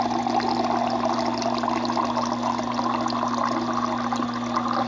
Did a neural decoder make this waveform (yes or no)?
no